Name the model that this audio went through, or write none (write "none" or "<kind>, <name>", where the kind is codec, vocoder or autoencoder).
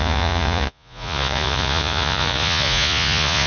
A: vocoder, Vocos